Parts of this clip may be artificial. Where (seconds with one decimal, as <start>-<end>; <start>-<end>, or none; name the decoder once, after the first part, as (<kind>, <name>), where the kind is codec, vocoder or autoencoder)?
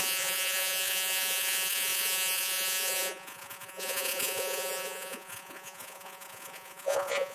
0.0-7.3 (vocoder, Vocos)